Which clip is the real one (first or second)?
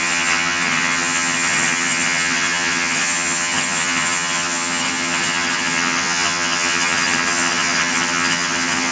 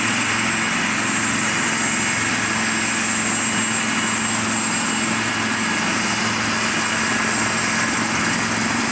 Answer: second